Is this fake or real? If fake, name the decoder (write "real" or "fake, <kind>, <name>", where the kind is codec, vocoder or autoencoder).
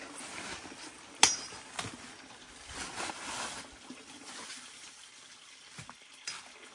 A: real